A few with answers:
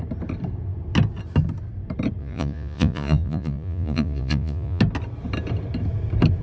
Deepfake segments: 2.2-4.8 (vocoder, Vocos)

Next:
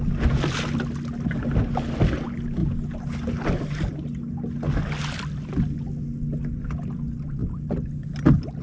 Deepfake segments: none

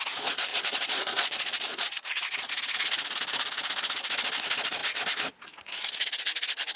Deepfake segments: 0.5-2.5 (vocoder, Vocos)